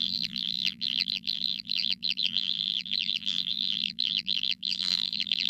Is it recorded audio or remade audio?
remade